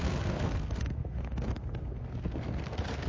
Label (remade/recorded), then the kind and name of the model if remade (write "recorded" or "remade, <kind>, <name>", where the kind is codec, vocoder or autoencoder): remade, codec, SNAC